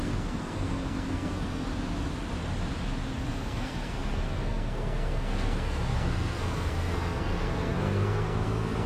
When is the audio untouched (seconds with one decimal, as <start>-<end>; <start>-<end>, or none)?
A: 1.7-3.3